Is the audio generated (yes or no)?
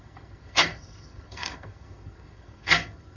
yes